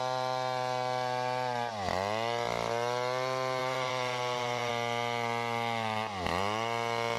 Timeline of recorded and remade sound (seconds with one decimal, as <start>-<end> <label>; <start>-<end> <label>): 0.0-3.6 recorded; 3.6-4.7 remade; 4.7-7.2 recorded